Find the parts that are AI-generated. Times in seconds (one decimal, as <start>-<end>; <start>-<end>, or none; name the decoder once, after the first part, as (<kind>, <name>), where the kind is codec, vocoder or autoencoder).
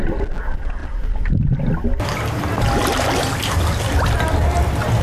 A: 0.8-3.8 (vocoder, BigVGAN v2)